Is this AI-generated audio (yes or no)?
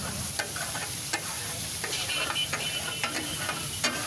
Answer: yes